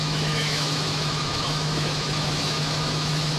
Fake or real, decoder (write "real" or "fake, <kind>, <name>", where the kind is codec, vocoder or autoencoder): fake, autoencoder, DAC-VAE